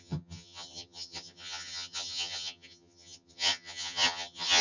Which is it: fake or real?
fake